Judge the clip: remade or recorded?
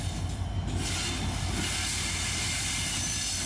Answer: recorded